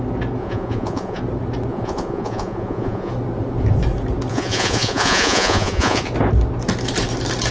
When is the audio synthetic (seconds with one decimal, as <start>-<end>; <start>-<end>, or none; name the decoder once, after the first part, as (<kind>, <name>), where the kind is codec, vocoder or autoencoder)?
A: 0.4-1.2 (vocoder, Vocos); 1.7-3.1; 4.3-6.1